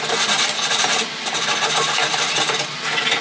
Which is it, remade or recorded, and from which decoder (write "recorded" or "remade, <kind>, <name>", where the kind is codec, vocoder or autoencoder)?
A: recorded